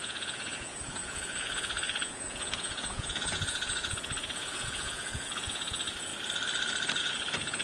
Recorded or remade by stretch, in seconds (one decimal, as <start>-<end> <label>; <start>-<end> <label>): 0.0-6.1 remade; 6.1-7.0 recorded; 7.0-7.6 remade